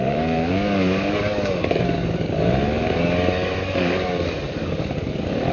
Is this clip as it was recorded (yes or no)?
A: no